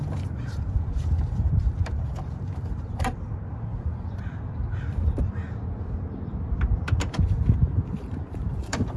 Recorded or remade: remade